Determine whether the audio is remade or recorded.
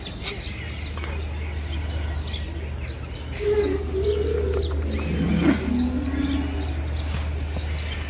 recorded